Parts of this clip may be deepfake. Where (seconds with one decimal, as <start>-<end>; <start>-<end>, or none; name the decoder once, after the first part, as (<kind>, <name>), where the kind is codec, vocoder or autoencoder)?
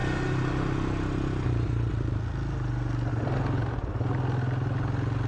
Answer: none